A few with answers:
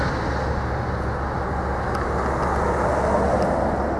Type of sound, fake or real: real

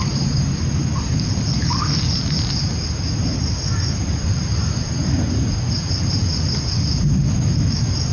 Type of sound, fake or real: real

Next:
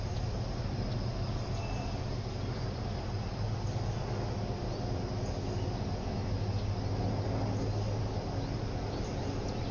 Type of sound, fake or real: real